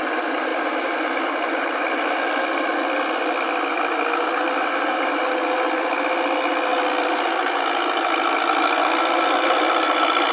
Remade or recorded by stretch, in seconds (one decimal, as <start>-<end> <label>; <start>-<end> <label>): 0.0-10.3 recorded